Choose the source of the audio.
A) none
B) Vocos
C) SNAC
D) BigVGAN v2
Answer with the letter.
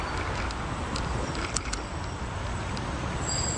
D